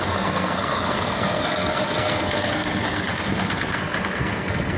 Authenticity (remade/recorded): remade